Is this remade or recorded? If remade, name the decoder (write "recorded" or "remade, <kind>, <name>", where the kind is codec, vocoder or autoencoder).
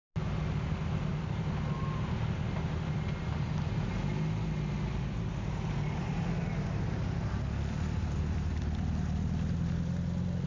recorded